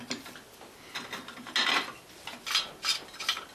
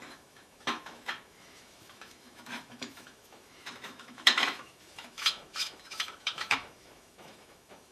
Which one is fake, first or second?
second